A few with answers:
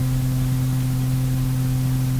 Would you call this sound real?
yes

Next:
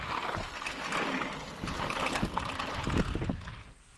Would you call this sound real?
yes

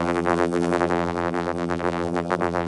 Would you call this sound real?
no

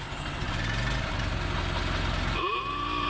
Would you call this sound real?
yes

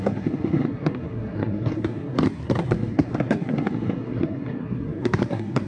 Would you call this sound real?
no